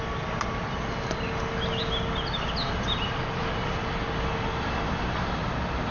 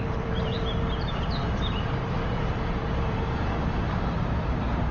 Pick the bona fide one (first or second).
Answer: first